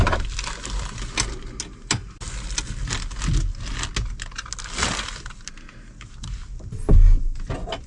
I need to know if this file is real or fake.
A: real